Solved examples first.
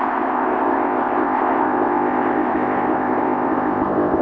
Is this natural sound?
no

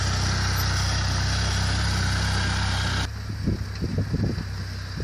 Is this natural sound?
yes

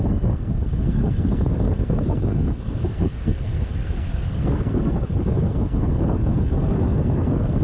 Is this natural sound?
no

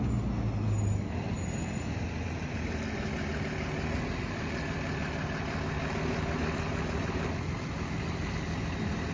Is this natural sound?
yes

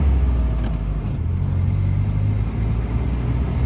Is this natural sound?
yes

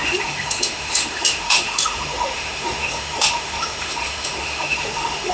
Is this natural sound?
no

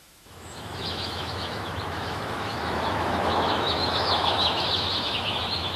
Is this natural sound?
no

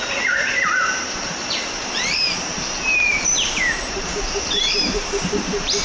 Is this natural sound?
no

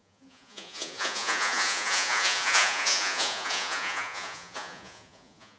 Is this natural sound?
no